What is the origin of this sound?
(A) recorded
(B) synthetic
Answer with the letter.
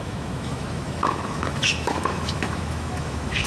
B